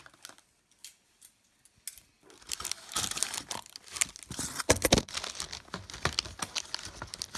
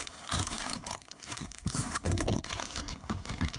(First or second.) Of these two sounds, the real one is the first